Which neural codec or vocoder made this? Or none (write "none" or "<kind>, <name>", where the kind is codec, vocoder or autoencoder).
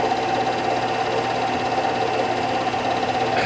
none